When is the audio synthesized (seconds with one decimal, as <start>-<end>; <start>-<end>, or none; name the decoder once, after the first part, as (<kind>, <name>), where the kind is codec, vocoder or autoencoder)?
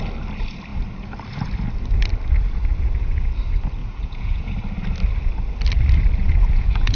3.8-4.5 (vocoder, Vocos); 6.2-7.0